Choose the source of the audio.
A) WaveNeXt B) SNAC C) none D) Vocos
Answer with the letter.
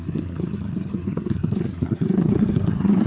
B